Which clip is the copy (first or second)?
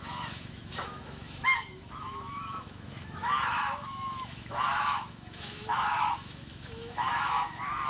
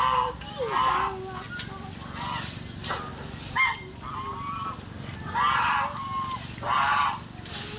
first